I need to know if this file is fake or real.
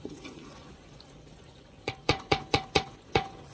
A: fake